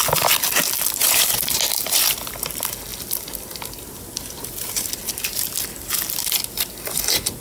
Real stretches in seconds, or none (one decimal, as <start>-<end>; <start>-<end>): 0.0-1.0; 1.6-7.4